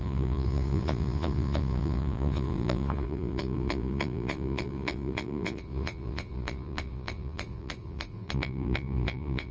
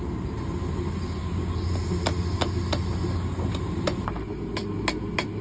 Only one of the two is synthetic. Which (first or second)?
first